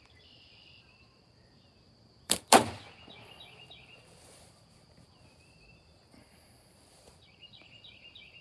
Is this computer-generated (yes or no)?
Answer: yes